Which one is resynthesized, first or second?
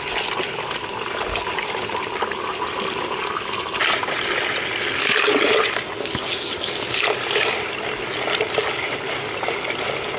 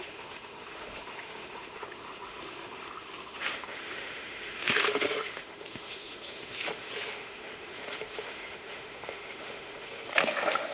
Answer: second